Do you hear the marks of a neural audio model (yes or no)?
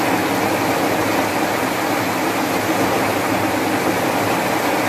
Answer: no